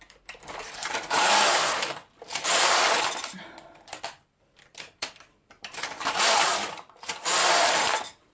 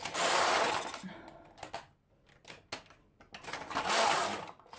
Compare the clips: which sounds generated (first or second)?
first